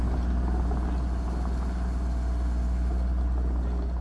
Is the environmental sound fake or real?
real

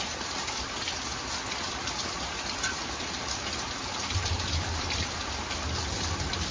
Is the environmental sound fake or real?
real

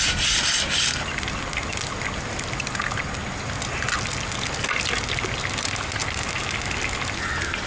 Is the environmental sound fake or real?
real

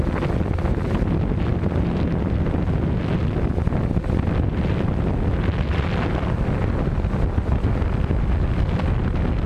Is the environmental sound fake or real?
real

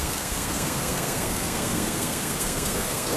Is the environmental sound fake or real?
fake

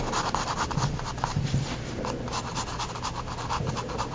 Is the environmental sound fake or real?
real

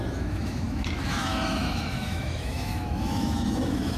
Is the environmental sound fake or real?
fake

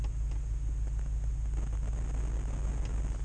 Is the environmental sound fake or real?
real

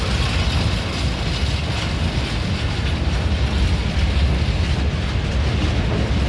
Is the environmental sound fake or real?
real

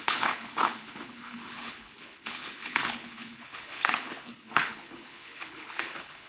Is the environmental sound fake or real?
fake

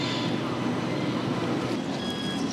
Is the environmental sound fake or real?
real